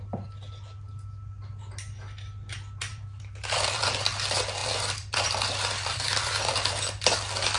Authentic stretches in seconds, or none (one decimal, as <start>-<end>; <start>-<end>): 0.0-2.9; 3.8-4.6; 6.7-7.6